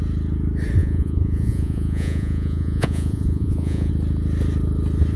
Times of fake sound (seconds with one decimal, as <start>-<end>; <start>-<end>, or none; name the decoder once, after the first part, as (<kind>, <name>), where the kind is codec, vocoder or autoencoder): 0.8-3.9 (vocoder, Vocos)